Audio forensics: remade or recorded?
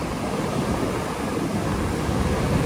recorded